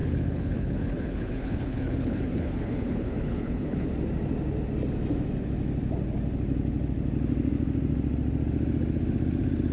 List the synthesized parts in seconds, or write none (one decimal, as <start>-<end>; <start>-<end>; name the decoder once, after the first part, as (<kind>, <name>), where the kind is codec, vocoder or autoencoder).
0.0-3.9 (codec, HILCodec)